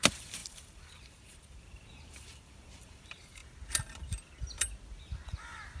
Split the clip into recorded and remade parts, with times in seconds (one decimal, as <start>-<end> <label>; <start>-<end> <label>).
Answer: 0.0-3.4 remade; 3.4-5.8 recorded

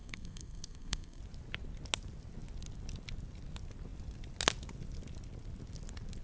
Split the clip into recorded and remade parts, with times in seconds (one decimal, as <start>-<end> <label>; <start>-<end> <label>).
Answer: 0.0-1.2 remade; 1.2-6.2 recorded

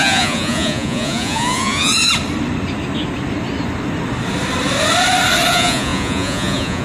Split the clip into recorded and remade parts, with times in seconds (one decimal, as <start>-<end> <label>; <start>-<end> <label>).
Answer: 0.0-1.9 remade; 1.9-5.5 recorded; 5.5-6.8 remade

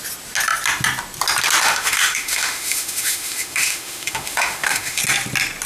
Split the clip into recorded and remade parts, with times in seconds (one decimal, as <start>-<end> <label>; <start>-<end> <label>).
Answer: 0.0-1.6 recorded; 1.6-5.0 remade; 5.0-5.7 recorded

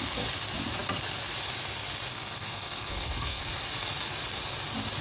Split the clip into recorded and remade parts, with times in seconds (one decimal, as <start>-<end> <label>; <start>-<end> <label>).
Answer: 0.0-2.1 recorded; 2.1-3.4 remade; 3.4-5.0 recorded